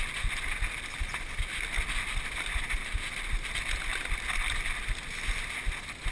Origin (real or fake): real